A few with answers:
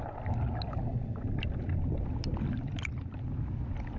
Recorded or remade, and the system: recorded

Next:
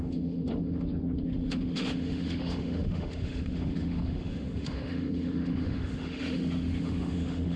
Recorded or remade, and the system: remade, autoencoder, DAC-VAE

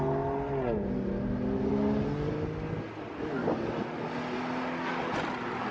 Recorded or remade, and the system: recorded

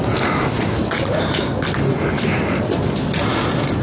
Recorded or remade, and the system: recorded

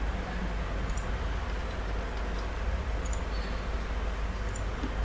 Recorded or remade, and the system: recorded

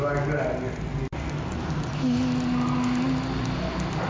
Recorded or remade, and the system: recorded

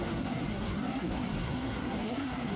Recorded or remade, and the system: remade, codec, SNAC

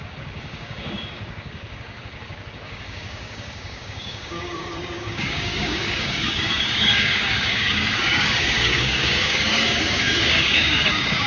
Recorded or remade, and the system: remade, codec, DAC